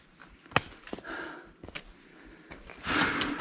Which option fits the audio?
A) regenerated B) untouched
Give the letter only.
B